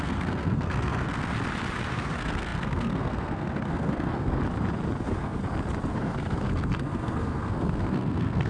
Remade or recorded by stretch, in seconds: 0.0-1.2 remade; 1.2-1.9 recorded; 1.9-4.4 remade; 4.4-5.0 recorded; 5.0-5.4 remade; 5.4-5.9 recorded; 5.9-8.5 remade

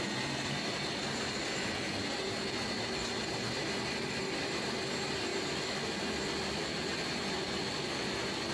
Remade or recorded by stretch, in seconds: 0.0-8.5 recorded